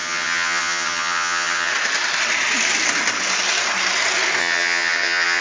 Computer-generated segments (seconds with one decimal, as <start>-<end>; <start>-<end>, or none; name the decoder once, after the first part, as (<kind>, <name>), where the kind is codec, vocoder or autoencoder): 0.0-1.7 (vocoder, HiFi-GAN); 4.4-5.4